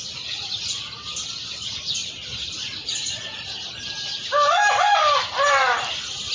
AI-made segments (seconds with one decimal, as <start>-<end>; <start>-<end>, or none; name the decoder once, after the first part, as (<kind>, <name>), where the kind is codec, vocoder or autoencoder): none